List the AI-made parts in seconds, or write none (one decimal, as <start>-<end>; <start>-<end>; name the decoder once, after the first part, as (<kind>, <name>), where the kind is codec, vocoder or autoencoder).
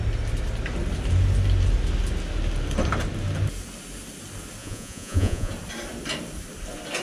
4.6-5.5 (vocoder, Vocos)